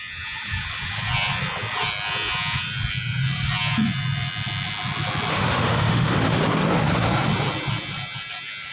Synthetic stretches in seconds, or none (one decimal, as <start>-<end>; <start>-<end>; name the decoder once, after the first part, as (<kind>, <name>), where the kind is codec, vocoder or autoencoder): 5.3-6.4 (autoencoder, DAC-VAE)